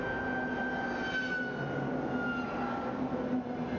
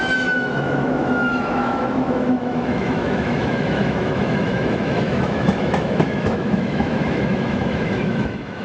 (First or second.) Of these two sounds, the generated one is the second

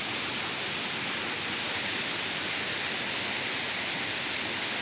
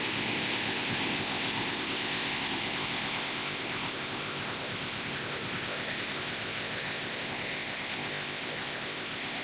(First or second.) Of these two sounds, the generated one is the second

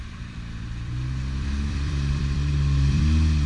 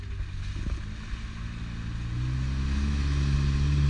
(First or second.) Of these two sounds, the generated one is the first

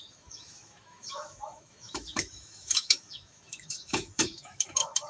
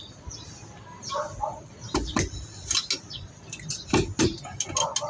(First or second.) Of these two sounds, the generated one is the first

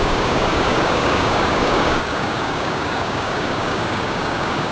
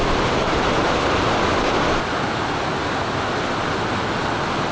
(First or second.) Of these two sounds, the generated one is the first